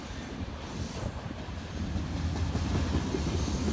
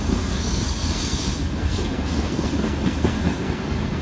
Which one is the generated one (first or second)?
second